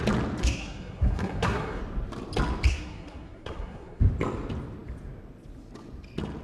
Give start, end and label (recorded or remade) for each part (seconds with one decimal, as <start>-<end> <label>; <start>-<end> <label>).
0.0-0.4 recorded; 0.4-1.8 remade; 1.8-2.7 recorded; 2.7-4.0 remade; 4.0-6.4 recorded